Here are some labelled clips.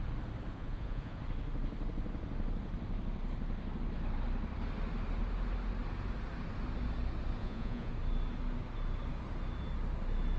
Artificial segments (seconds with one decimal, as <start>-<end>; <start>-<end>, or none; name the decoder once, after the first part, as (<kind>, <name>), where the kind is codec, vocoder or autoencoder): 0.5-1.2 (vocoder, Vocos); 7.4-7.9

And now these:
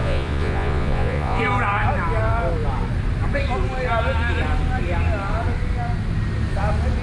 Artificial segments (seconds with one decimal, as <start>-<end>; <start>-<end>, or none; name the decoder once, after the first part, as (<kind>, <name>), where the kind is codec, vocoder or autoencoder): 0.0-1.4 (vocoder, Vocos)

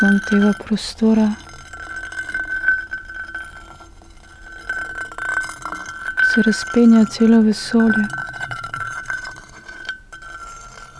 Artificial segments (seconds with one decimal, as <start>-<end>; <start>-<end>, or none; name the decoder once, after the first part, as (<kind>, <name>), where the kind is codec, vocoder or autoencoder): 8.2-9.9 (vocoder, Vocos)

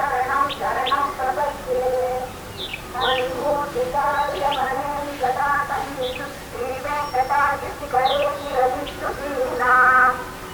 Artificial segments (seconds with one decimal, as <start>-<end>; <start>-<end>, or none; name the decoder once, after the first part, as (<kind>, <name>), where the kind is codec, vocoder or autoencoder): 8.3-9.1 (vocoder, Vocos)

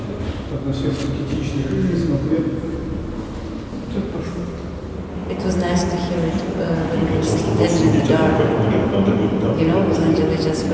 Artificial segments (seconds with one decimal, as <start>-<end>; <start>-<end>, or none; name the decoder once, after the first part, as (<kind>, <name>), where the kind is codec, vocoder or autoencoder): none

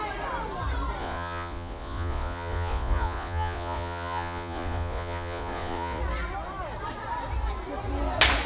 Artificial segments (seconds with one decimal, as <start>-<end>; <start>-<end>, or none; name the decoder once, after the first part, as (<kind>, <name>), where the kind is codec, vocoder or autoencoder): 1.0-6.0 (vocoder, Vocos)

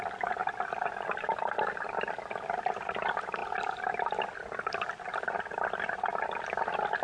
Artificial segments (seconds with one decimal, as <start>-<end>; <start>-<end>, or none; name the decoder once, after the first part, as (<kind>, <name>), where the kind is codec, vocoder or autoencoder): none